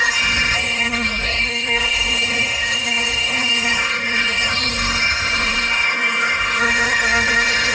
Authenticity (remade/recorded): remade